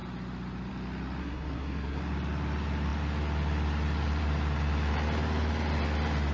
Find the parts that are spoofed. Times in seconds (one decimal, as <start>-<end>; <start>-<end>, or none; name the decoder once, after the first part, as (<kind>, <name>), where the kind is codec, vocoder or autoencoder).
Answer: 1.2-2.0 (codec, SNAC)